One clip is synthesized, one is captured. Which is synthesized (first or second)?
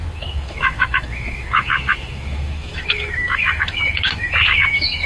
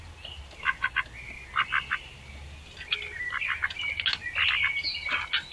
first